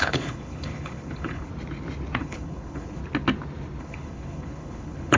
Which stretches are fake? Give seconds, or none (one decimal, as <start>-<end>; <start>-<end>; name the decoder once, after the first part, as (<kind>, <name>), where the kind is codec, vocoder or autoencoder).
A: 0.0-1.5 (codec, HILCodec); 2.2-3.0; 3.8-5.2